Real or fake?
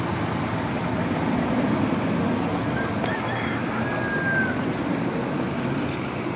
real